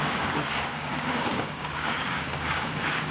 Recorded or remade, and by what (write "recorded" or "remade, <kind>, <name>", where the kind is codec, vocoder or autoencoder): remade, codec, DAC